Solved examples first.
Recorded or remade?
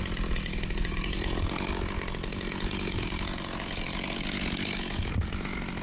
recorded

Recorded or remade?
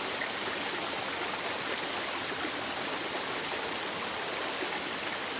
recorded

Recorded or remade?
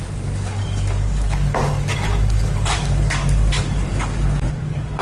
remade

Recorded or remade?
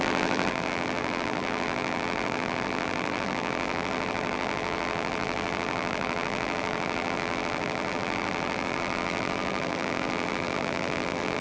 remade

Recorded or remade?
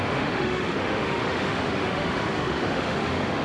remade